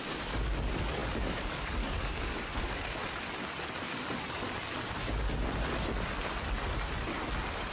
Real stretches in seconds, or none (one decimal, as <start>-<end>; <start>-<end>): 3.0-7.7